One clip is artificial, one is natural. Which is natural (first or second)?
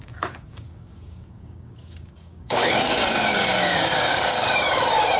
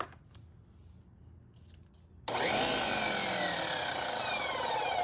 second